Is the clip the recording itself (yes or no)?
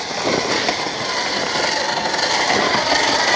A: yes